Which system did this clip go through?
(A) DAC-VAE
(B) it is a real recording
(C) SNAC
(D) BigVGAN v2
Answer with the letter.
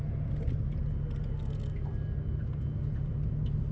B